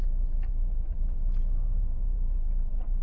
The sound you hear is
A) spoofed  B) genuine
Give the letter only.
A